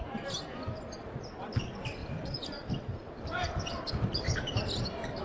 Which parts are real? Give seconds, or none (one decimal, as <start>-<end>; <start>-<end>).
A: 0.0-2.0; 3.1-5.2